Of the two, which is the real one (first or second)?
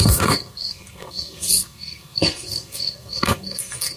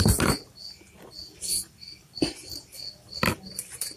second